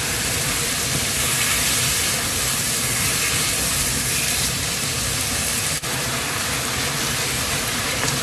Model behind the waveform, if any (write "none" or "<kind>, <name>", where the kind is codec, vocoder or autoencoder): vocoder, BigVGAN v2